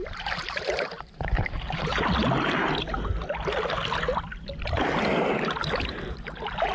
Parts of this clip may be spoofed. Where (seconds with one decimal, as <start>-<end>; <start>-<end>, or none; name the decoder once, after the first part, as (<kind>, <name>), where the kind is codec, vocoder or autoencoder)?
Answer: 0.0-1.9 (vocoder, BigVGAN v2); 5.9-6.7